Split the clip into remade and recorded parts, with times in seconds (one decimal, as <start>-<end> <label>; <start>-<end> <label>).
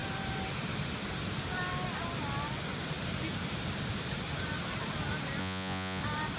0.0-5.4 recorded; 5.4-6.0 remade; 6.0-6.4 recorded